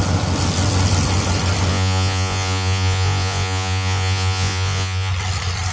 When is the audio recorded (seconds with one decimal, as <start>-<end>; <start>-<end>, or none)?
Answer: 0.0-1.7; 5.1-5.7